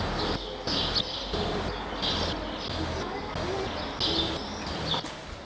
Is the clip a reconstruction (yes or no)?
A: no